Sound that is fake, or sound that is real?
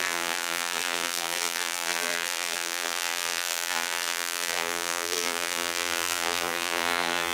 fake